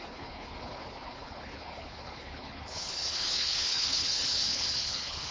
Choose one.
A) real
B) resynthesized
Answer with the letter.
B